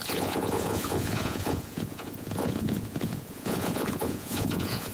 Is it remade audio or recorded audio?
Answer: remade